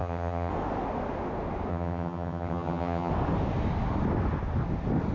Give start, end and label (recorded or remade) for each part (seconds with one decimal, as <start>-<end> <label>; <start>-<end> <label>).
0.0-0.5 remade; 0.5-1.7 recorded; 1.7-3.1 remade; 3.1-5.1 recorded